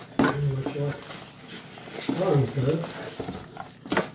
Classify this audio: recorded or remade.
recorded